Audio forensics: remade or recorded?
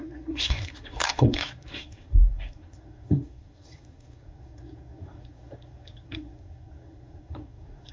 remade